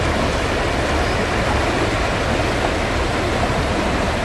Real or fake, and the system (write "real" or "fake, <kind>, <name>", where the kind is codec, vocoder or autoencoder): real